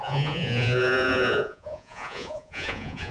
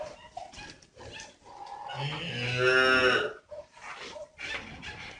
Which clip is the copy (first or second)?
first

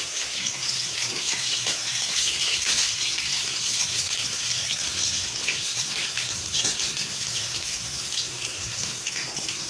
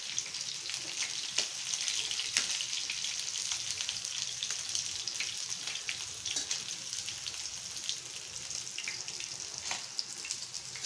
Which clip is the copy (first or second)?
first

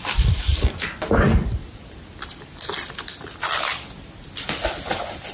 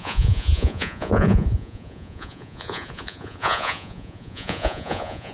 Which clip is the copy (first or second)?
second